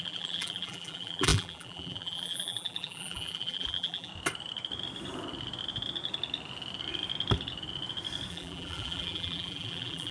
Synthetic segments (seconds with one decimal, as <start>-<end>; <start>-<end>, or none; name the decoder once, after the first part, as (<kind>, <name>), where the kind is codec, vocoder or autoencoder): 0.0-4.1 (vocoder, BigVGAN v2); 8.3-10.1